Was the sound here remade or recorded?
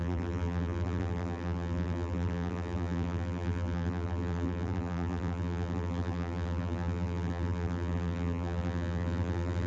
remade